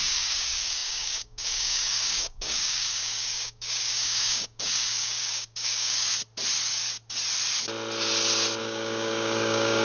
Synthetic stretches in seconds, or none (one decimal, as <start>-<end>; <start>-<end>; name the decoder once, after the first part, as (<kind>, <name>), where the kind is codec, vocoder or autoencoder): 0.0-6.1 (codec, DAC); 8.6-9.8